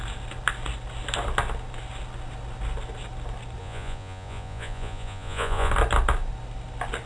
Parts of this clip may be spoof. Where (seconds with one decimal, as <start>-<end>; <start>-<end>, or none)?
3.6-5.7